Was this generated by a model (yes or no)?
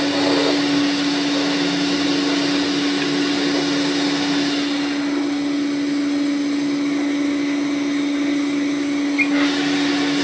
no